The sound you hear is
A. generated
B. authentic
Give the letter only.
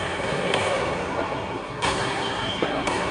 A